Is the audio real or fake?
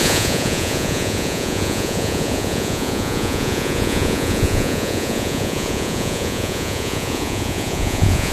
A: fake